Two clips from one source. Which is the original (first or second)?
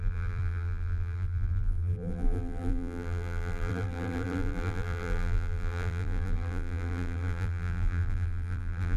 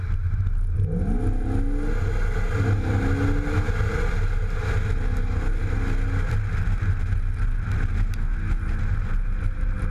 second